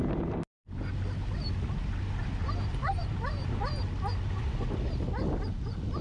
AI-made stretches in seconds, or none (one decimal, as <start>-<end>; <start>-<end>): 2.4-3.5